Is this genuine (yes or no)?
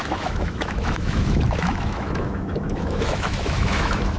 no